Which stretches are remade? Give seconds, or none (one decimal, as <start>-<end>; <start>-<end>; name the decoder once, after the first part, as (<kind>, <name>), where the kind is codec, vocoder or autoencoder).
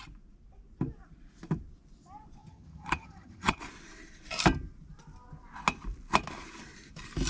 2.4-3.6 (vocoder, HiFi-GAN)